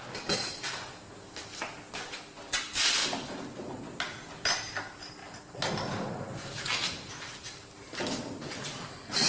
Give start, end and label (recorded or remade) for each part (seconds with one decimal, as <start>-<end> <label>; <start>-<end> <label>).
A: 0.0-9.3 recorded